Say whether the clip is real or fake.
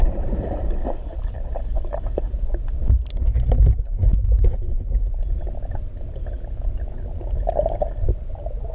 real